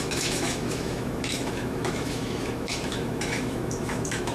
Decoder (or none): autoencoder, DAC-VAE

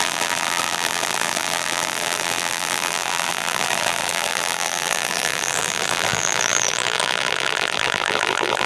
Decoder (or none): vocoder, BigVGAN v2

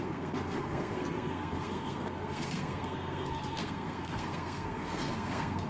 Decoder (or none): codec, SNAC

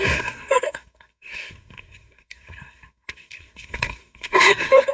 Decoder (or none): codec, SNAC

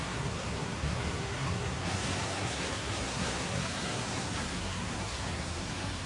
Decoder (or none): codec, SNAC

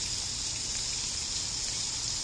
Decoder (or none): none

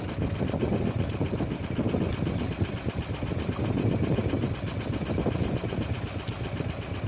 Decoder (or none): none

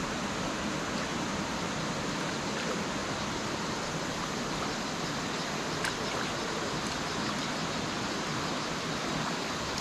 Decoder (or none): none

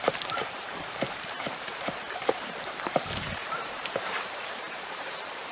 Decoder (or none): vocoder, BigVGAN v2